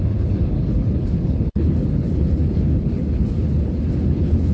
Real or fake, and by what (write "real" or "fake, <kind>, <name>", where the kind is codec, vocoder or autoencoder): fake, codec, HILCodec